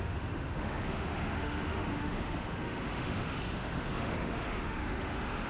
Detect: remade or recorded remade